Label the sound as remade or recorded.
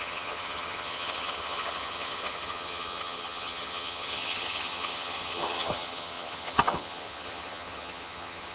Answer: remade